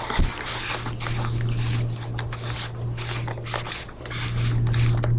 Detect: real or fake real